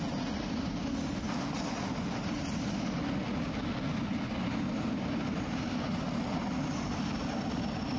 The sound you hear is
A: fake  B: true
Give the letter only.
B